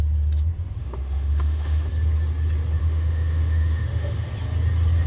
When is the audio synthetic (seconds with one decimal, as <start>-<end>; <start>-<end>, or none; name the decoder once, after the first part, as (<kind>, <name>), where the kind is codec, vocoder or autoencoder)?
0.8-1.9 (autoencoder, DAC-VAE); 2.8-4.3